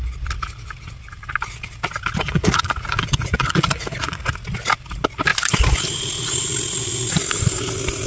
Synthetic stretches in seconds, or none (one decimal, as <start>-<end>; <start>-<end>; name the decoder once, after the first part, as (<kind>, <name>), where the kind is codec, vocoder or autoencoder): 2.2-4.3 (vocoder, Vocos)